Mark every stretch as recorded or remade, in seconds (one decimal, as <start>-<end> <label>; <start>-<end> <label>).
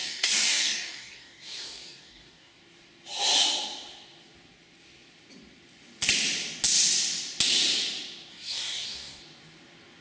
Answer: 0.0-2.6 remade; 2.6-8.3 recorded; 8.3-9.2 remade; 9.2-10.0 recorded